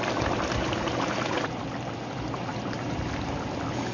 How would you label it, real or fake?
fake